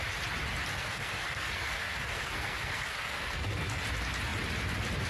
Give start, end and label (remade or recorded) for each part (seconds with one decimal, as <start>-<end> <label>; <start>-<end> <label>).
0.0-0.7 recorded; 0.7-3.8 remade; 3.8-5.1 recorded